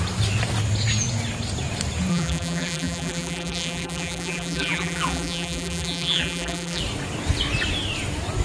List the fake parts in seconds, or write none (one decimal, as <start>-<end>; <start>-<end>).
2.1-6.8